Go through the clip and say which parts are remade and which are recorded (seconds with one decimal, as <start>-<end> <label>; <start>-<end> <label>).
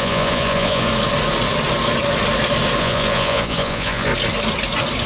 0.0-0.9 remade; 0.9-2.8 recorded; 2.8-4.1 remade; 4.1-5.1 recorded